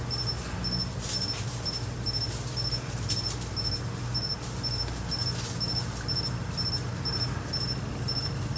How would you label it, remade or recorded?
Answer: recorded